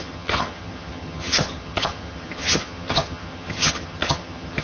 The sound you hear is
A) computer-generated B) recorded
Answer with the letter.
A